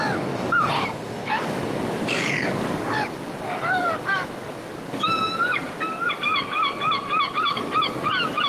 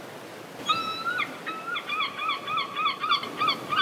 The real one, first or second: second